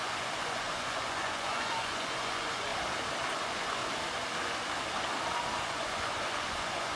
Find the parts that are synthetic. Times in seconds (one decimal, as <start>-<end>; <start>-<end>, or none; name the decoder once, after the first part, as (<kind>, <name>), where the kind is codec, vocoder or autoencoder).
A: 0.0-2.7 (vocoder, Vocos); 3.3-3.8; 5.6-7.0